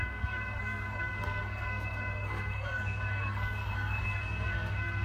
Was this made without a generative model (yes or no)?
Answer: no